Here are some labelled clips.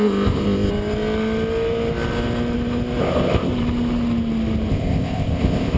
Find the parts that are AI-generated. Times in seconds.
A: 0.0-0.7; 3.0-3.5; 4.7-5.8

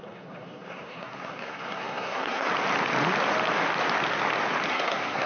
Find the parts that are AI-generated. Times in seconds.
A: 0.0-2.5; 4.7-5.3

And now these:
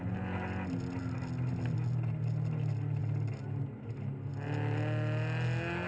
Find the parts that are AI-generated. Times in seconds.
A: none

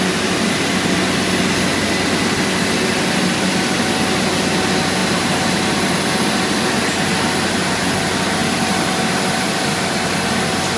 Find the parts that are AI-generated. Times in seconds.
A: 5.0-6.0

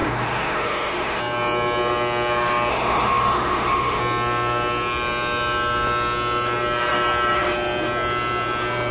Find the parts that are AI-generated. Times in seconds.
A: 0.0-1.2; 2.7-4.0

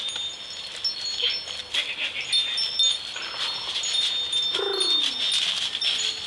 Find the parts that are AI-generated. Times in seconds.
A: none

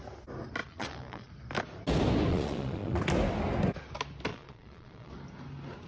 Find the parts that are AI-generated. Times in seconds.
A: 0.6-1.3; 2.3-3.0; 4.3-5.1